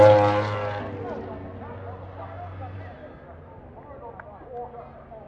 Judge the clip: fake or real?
real